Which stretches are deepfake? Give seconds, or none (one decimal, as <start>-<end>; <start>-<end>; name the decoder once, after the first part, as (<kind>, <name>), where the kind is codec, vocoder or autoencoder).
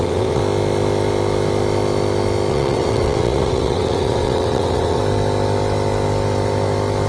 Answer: 0.0-0.4 (vocoder, WaveNeXt); 2.5-5.0